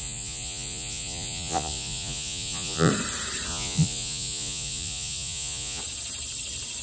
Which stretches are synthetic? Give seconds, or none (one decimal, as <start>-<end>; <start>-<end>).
0.0-2.9; 3.5-5.8